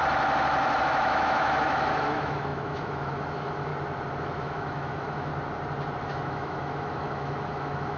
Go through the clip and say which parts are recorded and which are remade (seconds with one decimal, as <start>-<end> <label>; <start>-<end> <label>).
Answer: 0.0-0.8 recorded; 0.8-3.7 remade; 3.7-4.2 recorded; 4.2-5.3 remade; 5.3-6.0 recorded; 6.0-8.0 remade